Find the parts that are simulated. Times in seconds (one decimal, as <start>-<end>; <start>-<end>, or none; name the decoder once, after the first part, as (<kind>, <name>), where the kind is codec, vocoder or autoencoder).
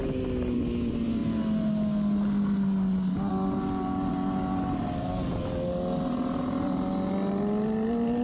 none